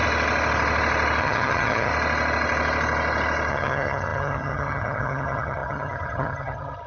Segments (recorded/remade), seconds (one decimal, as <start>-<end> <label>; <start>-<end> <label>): 0.0-1.2 recorded; 1.2-1.9 remade; 1.9-3.5 recorded; 3.5-6.9 remade